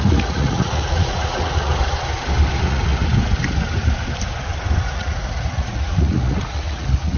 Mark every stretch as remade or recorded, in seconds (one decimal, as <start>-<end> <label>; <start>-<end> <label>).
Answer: 0.0-1.7 remade; 1.7-2.6 recorded; 2.6-3.0 remade; 3.0-4.8 recorded; 4.8-7.2 remade